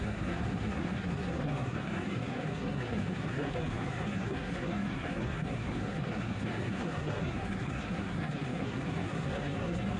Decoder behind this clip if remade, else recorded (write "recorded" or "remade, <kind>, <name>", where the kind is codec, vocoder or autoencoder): remade, codec, SNAC